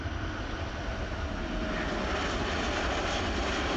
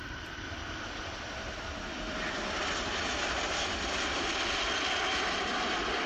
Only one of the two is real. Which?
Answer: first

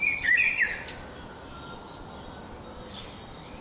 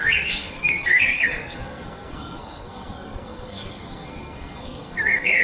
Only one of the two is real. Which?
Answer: first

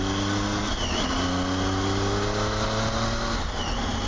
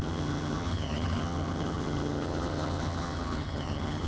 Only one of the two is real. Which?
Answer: first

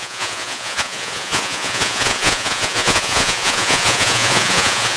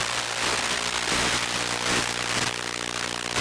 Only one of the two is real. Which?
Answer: second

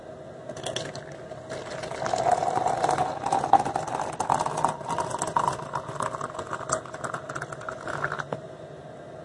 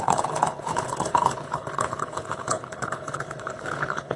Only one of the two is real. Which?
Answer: first